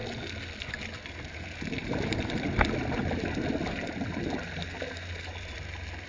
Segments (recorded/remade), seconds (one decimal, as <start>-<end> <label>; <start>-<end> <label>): 0.0-6.1 recorded